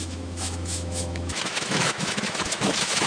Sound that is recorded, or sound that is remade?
remade